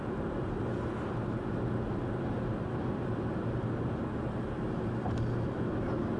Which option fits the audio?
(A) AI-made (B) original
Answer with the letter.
B